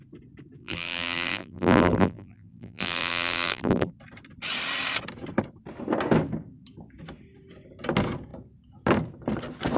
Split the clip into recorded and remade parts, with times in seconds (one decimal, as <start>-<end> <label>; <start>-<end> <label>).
0.0-0.6 recorded; 0.6-3.9 remade; 3.9-9.8 recorded

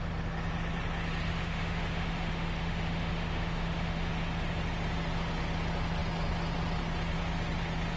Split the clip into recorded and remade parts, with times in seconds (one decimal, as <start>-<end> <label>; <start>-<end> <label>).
0.0-1.3 recorded; 1.3-4.1 remade; 4.1-8.0 recorded

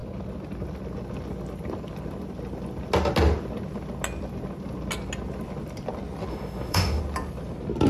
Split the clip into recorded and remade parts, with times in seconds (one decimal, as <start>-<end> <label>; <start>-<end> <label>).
0.0-6.3 recorded; 6.3-7.0 remade; 7.0-7.9 recorded

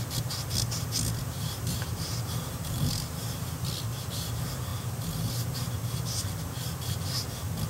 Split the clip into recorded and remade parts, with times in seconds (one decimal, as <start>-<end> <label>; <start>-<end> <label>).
0.0-1.2 recorded; 1.2-3.7 remade; 3.7-4.7 recorded; 4.7-5.7 remade; 5.7-7.7 recorded

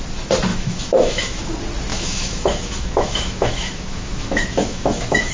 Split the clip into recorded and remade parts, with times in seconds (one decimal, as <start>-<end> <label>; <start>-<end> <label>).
0.0-0.5 recorded; 0.5-1.5 remade; 1.5-1.9 recorded; 1.9-5.3 remade

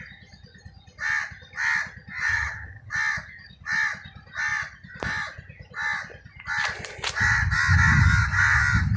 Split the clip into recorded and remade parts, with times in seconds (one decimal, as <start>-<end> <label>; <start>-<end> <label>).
0.0-2.3 recorded; 2.3-2.9 remade; 2.9-9.0 recorded

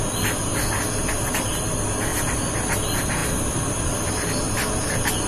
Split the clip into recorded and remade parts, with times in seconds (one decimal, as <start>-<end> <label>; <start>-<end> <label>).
0.0-3.2 recorded; 3.2-4.4 remade; 4.4-5.3 recorded

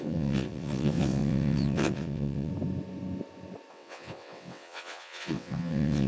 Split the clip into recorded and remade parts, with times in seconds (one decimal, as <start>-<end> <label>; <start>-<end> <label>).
0.0-2.5 remade; 2.5-3.7 recorded; 3.7-6.1 remade